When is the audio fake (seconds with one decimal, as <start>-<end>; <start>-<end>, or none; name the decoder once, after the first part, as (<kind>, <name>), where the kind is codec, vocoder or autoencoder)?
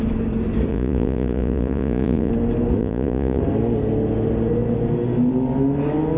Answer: 0.7-2.3 (vocoder, Vocos); 2.8-3.4